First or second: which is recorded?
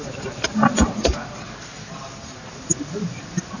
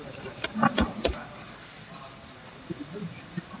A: first